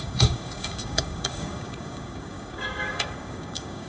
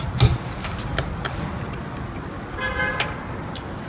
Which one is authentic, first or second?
second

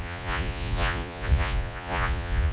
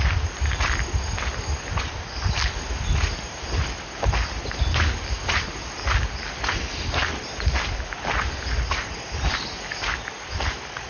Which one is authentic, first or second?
second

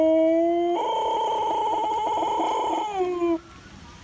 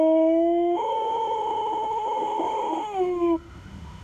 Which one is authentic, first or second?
first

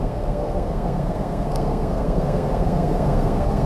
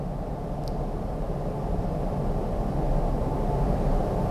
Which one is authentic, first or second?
second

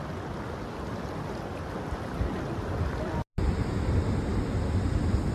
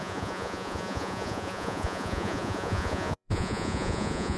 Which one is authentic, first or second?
first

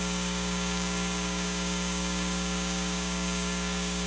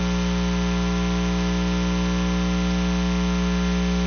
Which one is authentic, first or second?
second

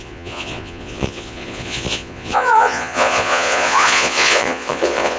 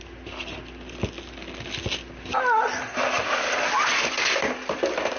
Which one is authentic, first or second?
second